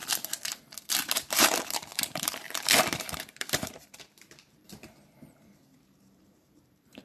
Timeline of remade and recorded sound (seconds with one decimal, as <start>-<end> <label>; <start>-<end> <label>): 0.0-1.3 recorded; 1.3-7.0 remade